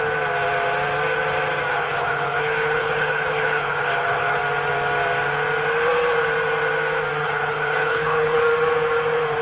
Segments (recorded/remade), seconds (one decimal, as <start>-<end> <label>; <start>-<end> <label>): 0.0-1.7 recorded; 1.7-4.4 remade; 4.4-7.2 recorded; 7.2-8.4 remade; 8.4-9.4 recorded